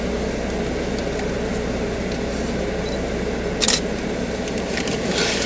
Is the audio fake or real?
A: real